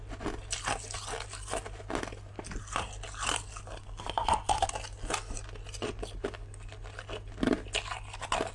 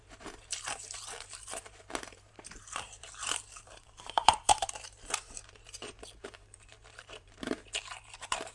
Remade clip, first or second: second